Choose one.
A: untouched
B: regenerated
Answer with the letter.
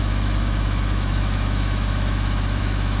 B